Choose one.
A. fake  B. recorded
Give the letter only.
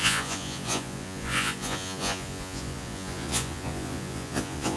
A